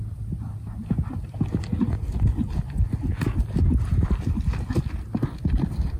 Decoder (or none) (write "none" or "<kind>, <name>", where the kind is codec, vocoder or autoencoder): none